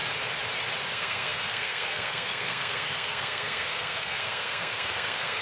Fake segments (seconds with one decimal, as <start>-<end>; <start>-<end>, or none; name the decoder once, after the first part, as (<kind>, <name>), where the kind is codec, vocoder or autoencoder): 0.9-5.4 (codec, SNAC)